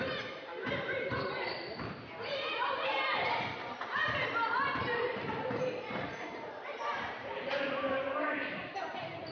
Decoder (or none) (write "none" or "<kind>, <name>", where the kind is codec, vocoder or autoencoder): vocoder, BigVGAN v2